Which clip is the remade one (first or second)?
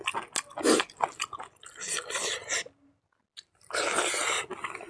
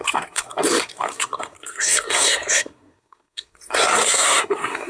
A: second